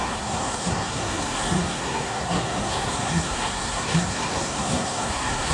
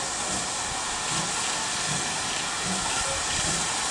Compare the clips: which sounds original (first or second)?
second